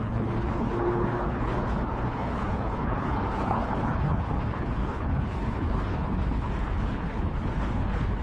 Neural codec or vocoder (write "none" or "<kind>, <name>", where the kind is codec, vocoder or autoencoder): codec, HILCodec